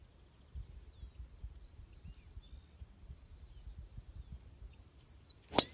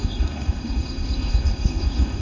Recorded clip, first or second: first